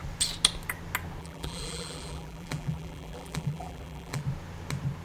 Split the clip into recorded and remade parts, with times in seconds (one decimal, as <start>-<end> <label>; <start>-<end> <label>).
0.0-1.2 recorded; 1.2-4.2 remade; 4.2-5.0 recorded

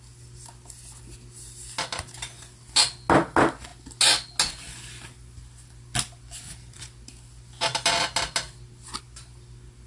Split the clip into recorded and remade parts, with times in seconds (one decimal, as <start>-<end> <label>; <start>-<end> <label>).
0.0-9.9 recorded